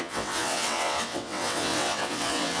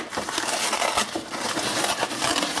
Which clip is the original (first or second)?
second